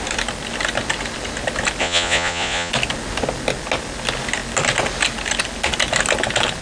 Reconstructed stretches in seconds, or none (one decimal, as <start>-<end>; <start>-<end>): 1.8-2.7